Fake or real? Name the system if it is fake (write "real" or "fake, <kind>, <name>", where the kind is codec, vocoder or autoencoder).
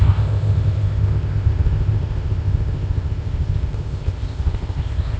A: fake, codec, ZipCodec